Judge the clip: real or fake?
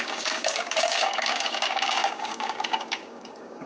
fake